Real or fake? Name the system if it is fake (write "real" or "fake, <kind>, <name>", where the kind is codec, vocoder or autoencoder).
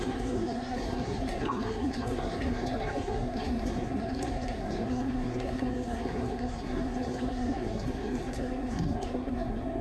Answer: fake, codec, SNAC